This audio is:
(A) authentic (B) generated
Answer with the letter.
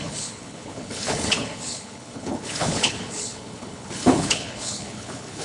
B